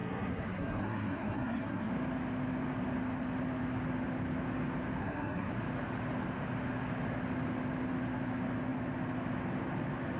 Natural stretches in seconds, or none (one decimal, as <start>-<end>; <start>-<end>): 1.9-5.0; 5.5-10.2